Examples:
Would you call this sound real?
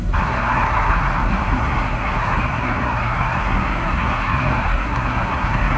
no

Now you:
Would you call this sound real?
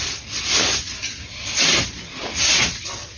yes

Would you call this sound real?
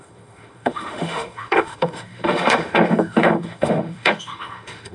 no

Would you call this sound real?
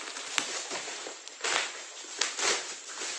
no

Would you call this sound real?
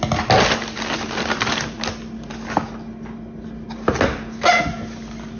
yes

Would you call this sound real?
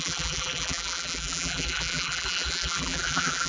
no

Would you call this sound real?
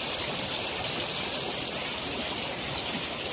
yes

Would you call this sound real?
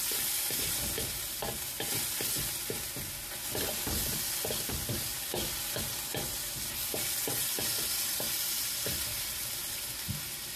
yes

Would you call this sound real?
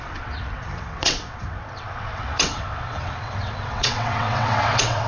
no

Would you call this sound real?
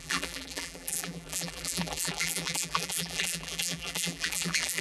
no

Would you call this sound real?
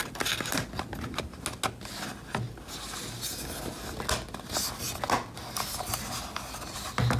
yes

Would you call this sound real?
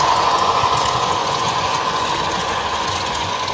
no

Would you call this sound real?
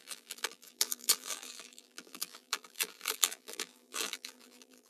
no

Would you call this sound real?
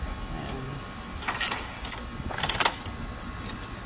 yes